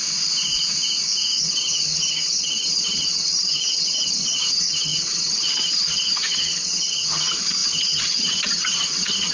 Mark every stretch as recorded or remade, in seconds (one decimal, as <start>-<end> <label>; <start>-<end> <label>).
0.0-1.4 recorded; 1.4-9.3 remade